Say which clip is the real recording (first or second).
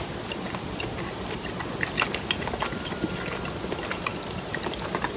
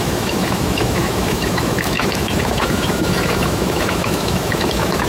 first